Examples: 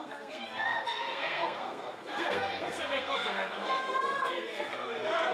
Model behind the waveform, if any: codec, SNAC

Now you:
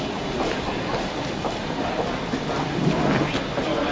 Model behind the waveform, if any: vocoder, BigVGAN v2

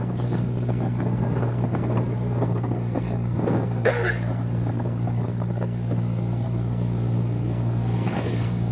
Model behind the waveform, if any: codec, SNAC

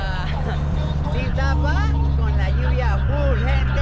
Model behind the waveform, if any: none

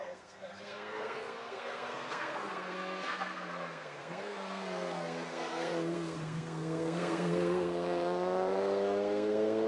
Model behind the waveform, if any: codec, SNAC